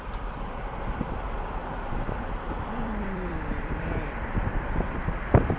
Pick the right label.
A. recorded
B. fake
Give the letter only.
B